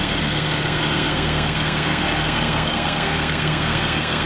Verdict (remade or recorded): remade